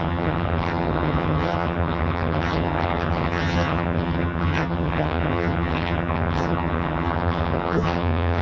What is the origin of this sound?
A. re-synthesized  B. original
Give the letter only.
A